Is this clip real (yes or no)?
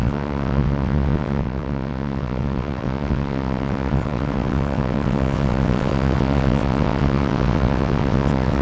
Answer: no